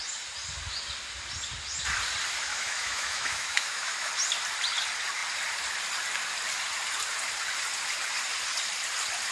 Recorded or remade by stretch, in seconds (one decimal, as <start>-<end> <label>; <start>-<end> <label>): 0.0-2.5 recorded; 2.5-4.1 remade; 4.1-9.3 recorded